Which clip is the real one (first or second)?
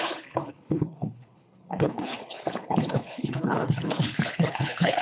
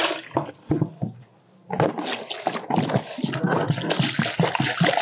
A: second